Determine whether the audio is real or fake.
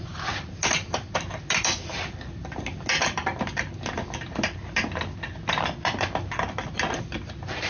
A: real